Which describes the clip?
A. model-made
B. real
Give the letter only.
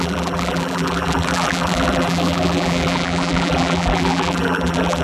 A